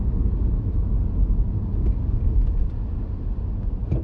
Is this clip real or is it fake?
real